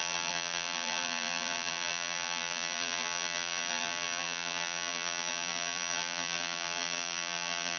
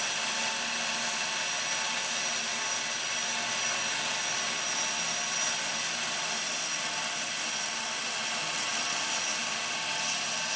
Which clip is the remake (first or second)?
first